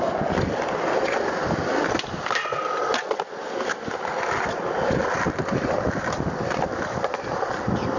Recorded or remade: recorded